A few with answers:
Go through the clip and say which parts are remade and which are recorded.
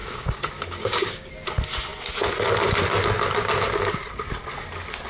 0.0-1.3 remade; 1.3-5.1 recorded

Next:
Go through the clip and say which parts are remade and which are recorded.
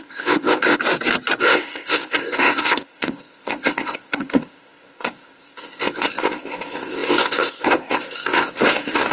0.0-0.8 remade; 0.8-1.4 recorded; 1.4-9.1 remade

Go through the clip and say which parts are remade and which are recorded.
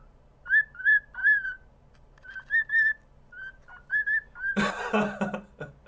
0.0-5.9 recorded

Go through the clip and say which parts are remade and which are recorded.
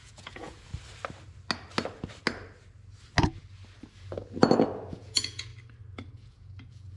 0.0-0.7 remade; 0.7-4.9 recorded; 4.9-5.5 remade; 5.5-6.1 recorded; 6.1-7.0 remade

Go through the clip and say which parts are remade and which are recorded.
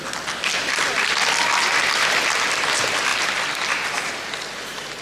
0.0-5.0 recorded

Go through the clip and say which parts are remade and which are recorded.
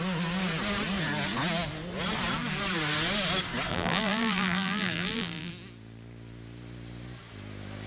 0.0-3.7 recorded; 3.7-5.5 remade; 5.5-7.9 recorded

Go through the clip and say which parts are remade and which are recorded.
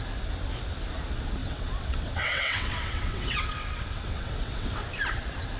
0.0-1.4 recorded; 1.4-4.8 remade; 4.8-5.6 recorded